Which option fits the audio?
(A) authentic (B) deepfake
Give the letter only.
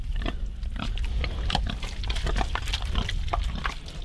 A